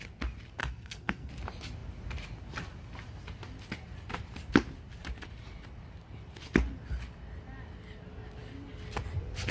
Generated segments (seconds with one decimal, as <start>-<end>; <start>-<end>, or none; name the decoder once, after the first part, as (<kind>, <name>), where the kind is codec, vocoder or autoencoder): 0.6-1.3 (codec, SNAC)